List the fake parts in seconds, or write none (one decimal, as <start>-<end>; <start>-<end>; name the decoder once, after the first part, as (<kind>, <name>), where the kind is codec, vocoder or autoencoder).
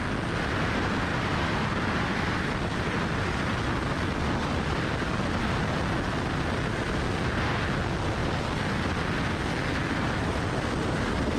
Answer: 1.1-5.2 (vocoder, BigVGAN v2); 8.2-8.7